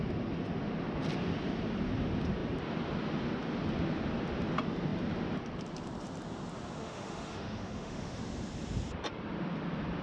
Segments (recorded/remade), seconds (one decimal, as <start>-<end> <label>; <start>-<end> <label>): 0.0-6.8 recorded; 6.8-8.2 remade; 8.2-10.0 recorded